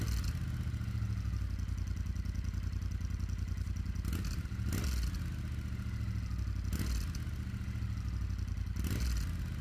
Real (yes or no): yes